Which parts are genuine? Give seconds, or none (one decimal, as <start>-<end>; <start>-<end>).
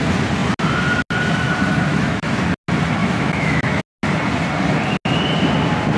0.0-1.9; 2.4-3.0; 3.8-6.0